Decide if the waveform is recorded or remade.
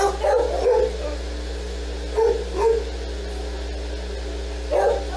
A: recorded